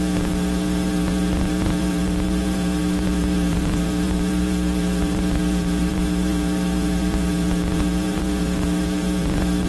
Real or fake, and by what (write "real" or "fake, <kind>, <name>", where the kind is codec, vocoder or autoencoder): fake, vocoder, BigVGAN v2